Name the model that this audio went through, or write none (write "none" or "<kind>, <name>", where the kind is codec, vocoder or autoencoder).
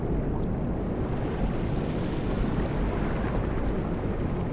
none